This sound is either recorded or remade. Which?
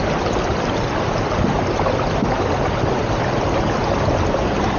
recorded